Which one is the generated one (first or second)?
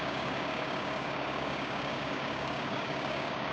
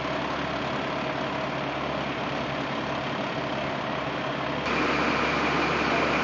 first